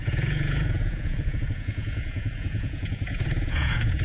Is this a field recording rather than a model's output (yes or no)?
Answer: no